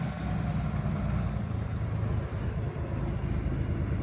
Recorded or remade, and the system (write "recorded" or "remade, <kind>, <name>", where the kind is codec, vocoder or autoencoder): recorded